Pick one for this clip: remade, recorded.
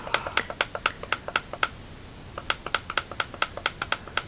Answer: recorded